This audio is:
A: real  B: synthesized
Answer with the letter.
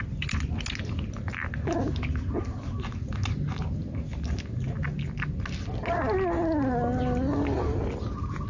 A